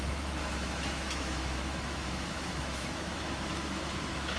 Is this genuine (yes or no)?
no